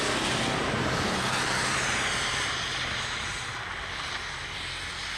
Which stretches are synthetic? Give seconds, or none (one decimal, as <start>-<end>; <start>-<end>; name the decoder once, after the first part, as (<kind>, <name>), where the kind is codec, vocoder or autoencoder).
0.6-3.5 (vocoder, BigVGAN v2)